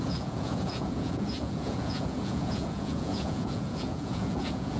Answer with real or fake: fake